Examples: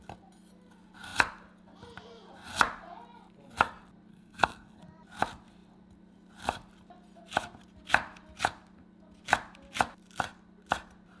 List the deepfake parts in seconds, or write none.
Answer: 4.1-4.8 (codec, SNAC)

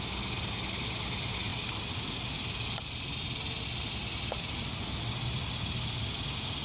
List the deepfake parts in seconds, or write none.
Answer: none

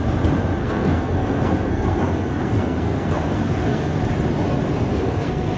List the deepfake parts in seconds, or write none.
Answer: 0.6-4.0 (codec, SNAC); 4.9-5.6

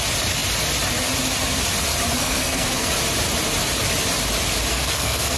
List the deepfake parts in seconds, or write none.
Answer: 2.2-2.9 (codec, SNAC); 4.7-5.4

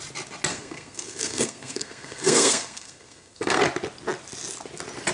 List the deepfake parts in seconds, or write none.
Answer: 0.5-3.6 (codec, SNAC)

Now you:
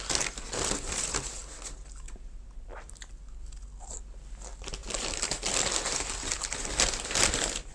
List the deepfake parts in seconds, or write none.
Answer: none

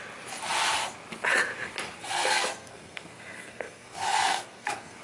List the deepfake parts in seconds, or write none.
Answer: 2.0-5.0 (codec, SNAC)

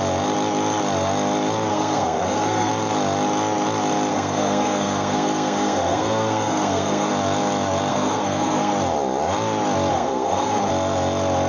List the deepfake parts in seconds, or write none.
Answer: 1.7-2.7 (codec, SNAC); 4.1-7.1; 7.9-8.7; 9.9-10.7